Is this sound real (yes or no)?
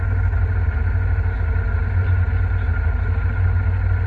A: yes